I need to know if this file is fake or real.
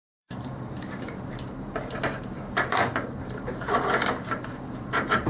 fake